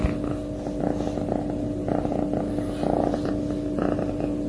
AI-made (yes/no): no